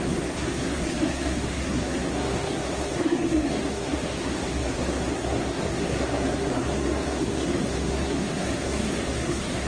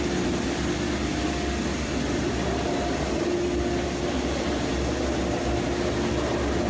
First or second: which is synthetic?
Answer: first